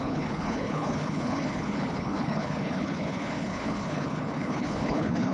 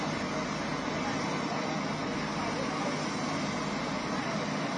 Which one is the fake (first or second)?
first